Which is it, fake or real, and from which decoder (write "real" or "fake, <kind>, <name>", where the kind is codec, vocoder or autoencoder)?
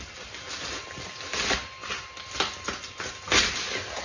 real